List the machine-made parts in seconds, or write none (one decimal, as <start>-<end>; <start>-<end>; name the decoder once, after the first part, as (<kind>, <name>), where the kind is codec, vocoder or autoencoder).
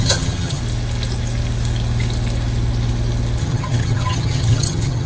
0.0-0.6 (vocoder, HiFi-GAN); 3.4-5.1